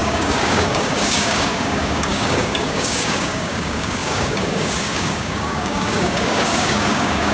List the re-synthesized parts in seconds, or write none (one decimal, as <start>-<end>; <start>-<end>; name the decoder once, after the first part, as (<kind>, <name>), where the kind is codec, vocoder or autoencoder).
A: 0.0-7.3 (codec, DAC)